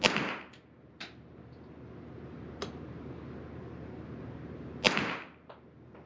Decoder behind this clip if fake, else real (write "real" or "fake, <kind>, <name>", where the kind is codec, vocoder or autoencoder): real